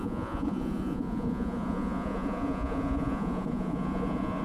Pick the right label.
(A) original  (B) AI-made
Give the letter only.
B